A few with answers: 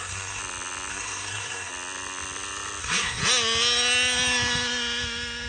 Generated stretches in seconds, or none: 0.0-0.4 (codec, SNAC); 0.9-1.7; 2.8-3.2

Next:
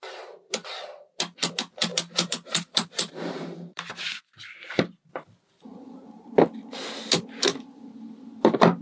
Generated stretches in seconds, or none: 1.9-4.2 (vocoder, BigVGAN v2); 5.7-6.6

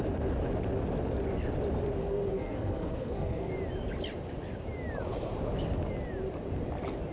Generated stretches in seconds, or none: 2.0-3.5 (codec, SNAC)

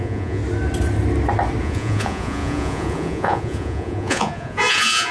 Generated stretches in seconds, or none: 0.0-0.4 (vocoder, Vocos); 1.6-5.1

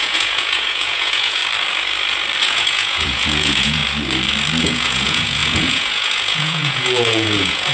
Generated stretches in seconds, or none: 0.0-1.4 (vocoder, Vocos); 2.4-3.8; 4.6-7.7

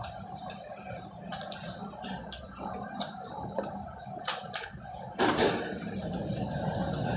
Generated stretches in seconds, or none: 0.0-1.8 (vocoder, BigVGAN v2); 2.4-7.2